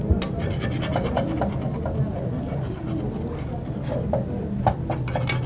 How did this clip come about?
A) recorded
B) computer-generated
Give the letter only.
A